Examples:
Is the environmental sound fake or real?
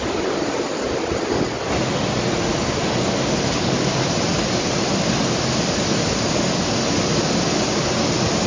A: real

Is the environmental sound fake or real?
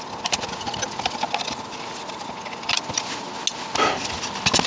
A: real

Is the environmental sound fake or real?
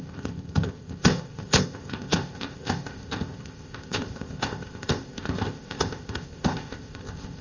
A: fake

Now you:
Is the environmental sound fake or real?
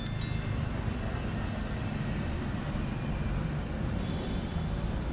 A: real